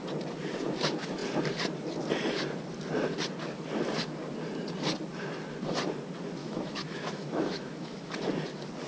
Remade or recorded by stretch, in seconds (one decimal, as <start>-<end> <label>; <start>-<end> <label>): 0.0-6.4 recorded; 6.4-8.1 remade; 8.1-8.9 recorded